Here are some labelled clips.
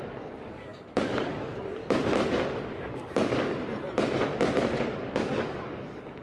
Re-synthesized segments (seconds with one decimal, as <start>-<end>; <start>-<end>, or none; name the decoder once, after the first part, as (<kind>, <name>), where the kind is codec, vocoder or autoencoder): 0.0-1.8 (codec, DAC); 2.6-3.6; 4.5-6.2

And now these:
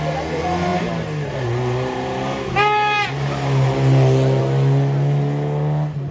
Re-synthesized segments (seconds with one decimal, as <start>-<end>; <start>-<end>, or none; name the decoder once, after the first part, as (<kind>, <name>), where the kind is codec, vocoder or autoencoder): none

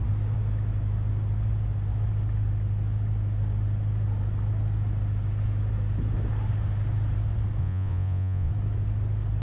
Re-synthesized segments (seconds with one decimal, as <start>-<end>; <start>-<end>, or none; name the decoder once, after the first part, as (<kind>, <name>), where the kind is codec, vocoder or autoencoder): 7.6-8.5 (vocoder, Vocos)